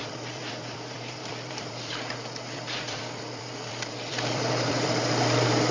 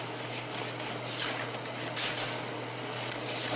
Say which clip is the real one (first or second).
second